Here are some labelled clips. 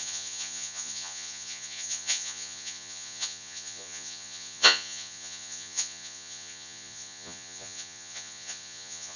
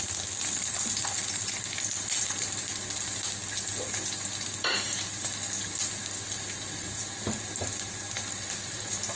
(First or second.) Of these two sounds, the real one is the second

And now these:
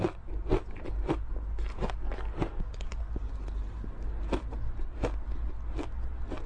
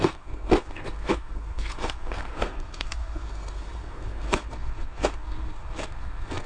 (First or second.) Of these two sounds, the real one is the first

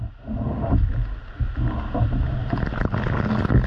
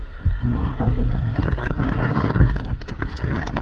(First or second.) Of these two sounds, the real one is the first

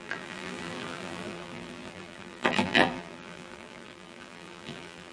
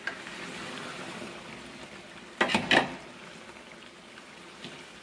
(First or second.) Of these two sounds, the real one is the second